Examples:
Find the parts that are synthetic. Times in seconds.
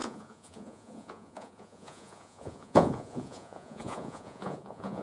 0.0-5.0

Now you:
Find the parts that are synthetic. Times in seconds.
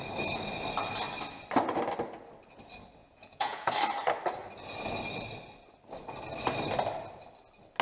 3.0-3.7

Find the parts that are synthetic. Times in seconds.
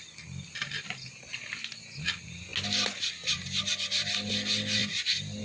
none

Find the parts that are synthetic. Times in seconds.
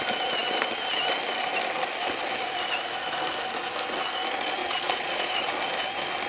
4.6-5.5